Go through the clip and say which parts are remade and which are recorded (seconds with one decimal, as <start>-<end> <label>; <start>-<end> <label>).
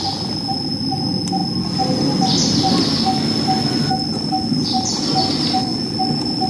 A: 0.0-6.5 recorded